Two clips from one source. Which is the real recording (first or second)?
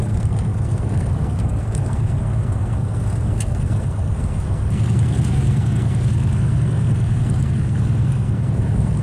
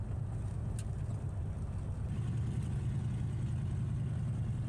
second